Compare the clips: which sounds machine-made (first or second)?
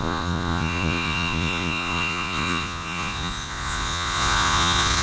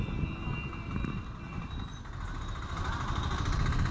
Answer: first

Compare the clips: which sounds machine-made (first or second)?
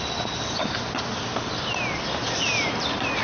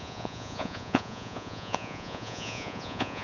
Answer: second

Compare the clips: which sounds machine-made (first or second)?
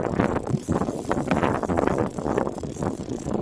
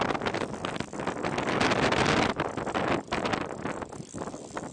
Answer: first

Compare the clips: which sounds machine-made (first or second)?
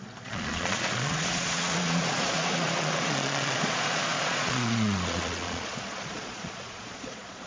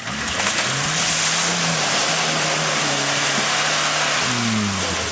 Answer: first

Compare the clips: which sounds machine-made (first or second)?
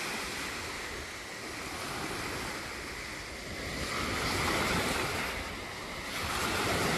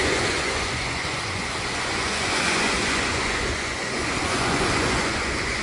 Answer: second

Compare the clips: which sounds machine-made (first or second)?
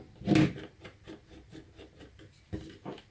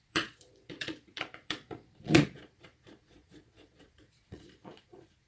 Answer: second